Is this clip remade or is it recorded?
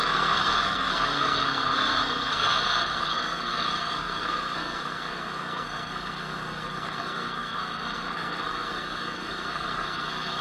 remade